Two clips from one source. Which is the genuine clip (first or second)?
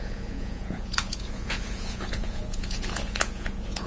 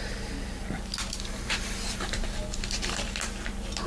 second